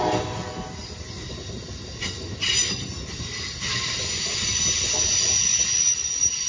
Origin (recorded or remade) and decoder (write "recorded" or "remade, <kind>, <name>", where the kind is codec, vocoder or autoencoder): recorded